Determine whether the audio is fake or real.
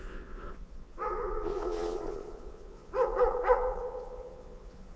fake